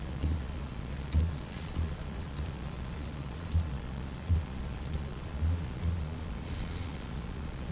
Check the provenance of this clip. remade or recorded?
remade